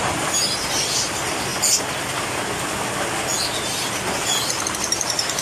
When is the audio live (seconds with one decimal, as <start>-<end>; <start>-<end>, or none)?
1.5-4.6